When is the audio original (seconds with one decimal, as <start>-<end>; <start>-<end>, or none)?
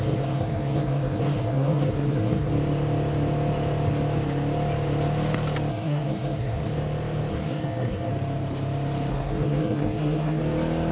2.5-5.7; 6.7-7.3; 8.1-9.1; 10.4-10.9